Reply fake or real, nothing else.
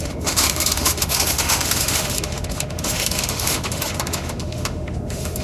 fake